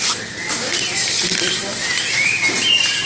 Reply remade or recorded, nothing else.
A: recorded